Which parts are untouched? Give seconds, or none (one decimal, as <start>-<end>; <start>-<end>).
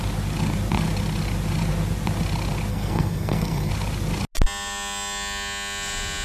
0.0-2.7; 3.7-6.2